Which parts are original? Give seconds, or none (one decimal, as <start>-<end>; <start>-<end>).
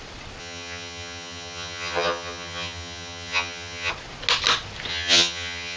0.0-0.4; 3.9-4.9